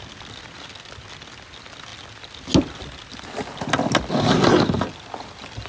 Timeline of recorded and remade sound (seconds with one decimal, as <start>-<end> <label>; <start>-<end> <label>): 0.0-5.7 recorded